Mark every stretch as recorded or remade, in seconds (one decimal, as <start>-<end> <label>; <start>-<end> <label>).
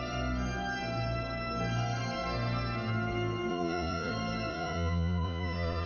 0.0-3.5 recorded; 3.5-4.1 remade; 4.1-4.5 recorded; 4.5-5.9 remade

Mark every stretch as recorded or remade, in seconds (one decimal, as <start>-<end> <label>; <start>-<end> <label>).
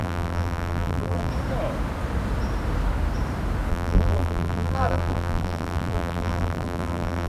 0.0-1.3 remade; 1.3-3.7 recorded; 3.7-7.3 remade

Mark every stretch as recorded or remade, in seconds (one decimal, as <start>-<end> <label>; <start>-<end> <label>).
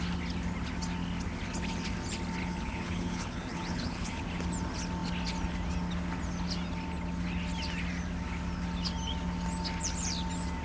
0.0-2.4 recorded; 2.4-4.2 remade; 4.2-10.6 recorded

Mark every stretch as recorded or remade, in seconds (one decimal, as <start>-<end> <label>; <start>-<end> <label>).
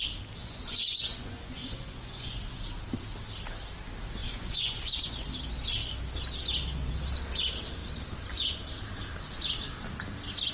0.0-0.4 recorded; 0.4-2.6 remade; 2.6-4.2 recorded; 4.2-5.3 remade; 5.3-10.5 recorded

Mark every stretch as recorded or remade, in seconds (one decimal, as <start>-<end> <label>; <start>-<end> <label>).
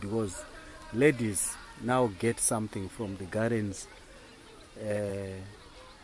0.0-6.0 recorded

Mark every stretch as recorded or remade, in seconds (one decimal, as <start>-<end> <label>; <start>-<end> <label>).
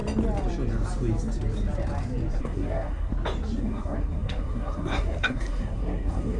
0.0-2.4 recorded; 2.4-3.1 remade; 3.1-3.6 recorded; 3.6-6.4 remade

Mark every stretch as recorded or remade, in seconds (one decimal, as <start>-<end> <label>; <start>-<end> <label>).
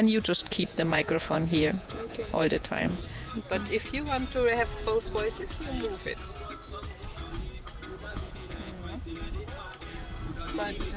0.0-0.4 recorded; 0.4-3.0 remade; 3.0-8.1 recorded; 8.1-8.8 remade; 8.8-11.0 recorded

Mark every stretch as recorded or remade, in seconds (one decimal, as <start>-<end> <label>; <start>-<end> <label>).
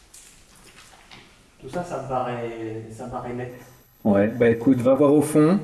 0.0-3.5 recorded; 3.5-5.0 remade; 5.0-5.6 recorded